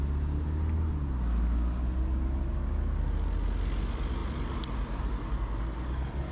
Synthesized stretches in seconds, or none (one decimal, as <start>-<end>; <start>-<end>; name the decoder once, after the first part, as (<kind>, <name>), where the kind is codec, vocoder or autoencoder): none